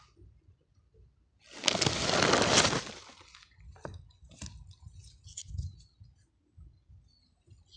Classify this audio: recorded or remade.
recorded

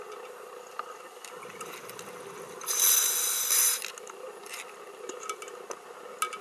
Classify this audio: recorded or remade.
recorded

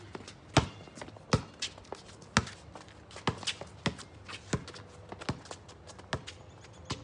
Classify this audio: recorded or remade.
recorded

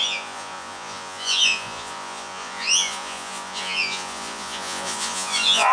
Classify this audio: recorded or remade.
remade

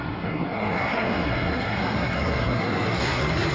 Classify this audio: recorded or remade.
remade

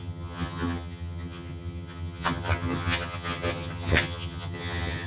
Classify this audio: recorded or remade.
remade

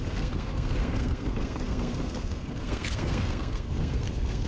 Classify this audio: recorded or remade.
remade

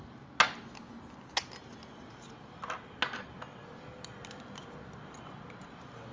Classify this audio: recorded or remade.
recorded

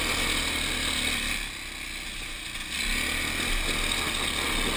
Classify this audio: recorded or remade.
recorded